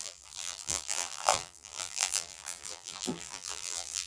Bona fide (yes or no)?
no